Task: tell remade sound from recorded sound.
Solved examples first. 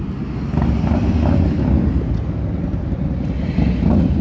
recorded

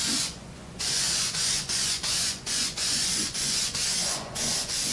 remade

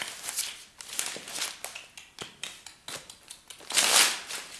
recorded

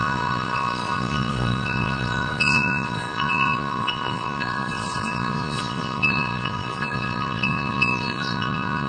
remade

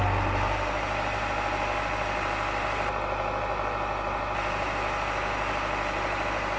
recorded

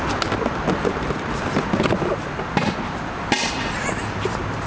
recorded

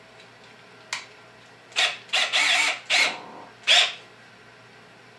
recorded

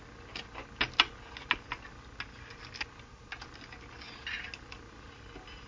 recorded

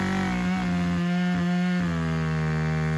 recorded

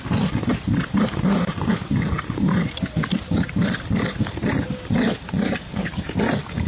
recorded